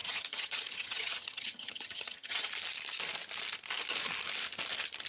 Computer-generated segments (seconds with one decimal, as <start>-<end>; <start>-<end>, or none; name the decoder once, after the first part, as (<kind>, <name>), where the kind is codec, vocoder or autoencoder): 0.0-2.5 (vocoder, HiFi-GAN)